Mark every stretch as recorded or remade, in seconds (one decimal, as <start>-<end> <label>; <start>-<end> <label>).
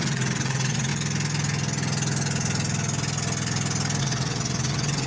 0.0-0.9 remade; 0.9-4.0 recorded; 4.0-5.1 remade